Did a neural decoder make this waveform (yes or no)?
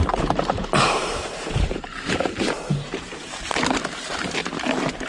yes